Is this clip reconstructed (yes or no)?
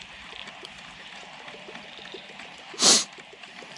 yes